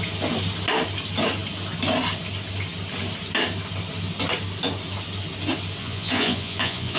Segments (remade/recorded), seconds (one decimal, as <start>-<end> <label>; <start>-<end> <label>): 0.0-5.8 recorded; 5.8-7.0 remade